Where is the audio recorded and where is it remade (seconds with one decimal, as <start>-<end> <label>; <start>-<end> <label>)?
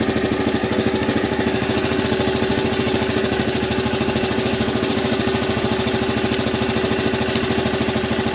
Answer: 0.0-0.6 recorded; 0.6-2.0 remade; 2.0-2.5 recorded; 2.5-5.7 remade; 5.7-8.3 recorded